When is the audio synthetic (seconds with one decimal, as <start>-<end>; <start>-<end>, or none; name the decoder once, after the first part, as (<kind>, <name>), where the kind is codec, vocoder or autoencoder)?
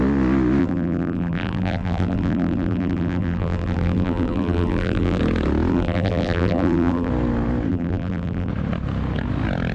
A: 0.6-5.2 (vocoder, BigVGAN v2); 5.7-7.1; 7.7-8.5